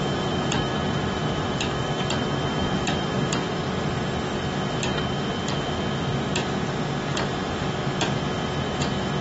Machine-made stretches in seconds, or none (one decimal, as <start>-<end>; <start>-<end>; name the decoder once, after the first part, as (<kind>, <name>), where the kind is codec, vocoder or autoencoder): 0.7-3.7 (vocoder, BigVGAN v2)